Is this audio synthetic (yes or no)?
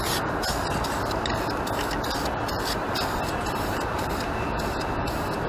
no